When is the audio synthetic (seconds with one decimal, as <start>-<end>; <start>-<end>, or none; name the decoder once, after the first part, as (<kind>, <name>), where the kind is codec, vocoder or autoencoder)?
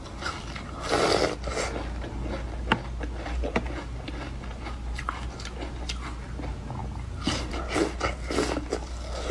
none